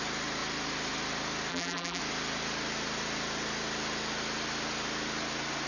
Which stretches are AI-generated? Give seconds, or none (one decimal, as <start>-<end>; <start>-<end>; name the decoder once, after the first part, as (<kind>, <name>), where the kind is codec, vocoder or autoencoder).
1.5-2.0 (vocoder, BigVGAN v2)